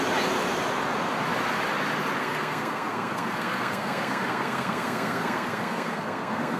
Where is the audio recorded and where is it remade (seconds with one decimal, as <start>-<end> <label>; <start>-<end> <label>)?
0.0-2.2 recorded; 2.2-6.6 remade